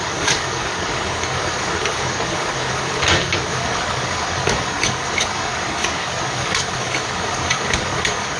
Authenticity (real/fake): fake